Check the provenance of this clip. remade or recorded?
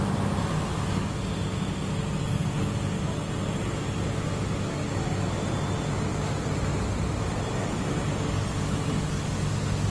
recorded